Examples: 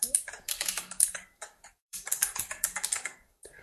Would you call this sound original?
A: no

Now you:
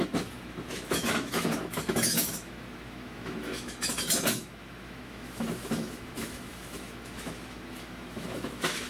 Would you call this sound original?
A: no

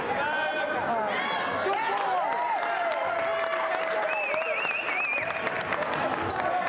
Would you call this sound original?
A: yes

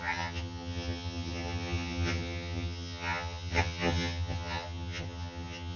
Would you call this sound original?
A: no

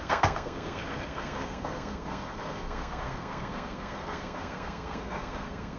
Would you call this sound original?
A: no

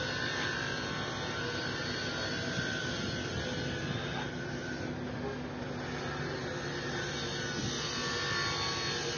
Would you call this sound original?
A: yes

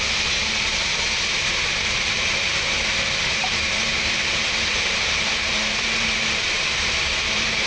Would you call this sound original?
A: no